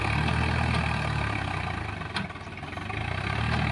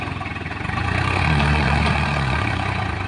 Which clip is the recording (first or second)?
first